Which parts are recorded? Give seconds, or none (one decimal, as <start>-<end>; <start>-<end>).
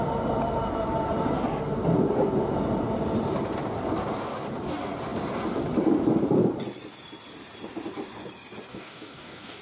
0.0-8.7